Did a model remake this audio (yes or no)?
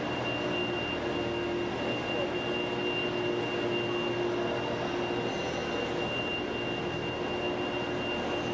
no